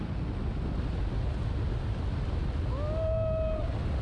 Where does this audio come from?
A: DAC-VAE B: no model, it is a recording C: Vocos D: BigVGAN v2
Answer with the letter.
B